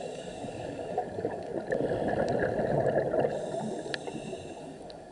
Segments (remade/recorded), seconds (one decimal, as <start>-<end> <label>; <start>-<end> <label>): 0.0-1.5 remade; 1.5-4.6 recorded; 4.6-5.1 remade